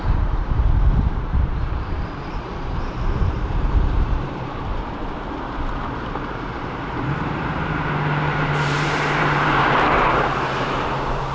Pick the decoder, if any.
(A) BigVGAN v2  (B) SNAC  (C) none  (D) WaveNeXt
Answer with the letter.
A